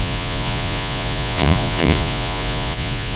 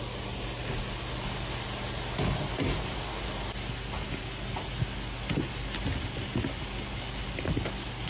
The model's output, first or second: first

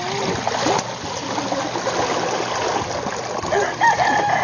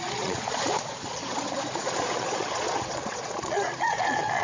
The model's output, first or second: second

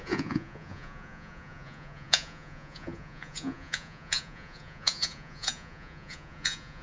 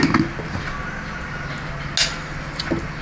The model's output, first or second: first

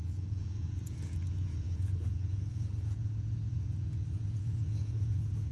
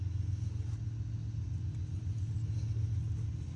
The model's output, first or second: first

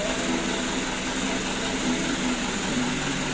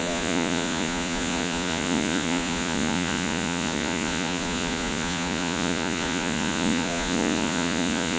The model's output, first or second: second